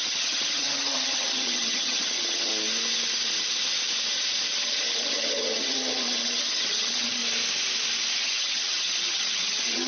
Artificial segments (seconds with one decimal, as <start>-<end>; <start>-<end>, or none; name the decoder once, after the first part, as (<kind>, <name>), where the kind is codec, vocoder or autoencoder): 0.0-2.5 (vocoder, HiFi-GAN); 4.6-7.2; 8.1-9.9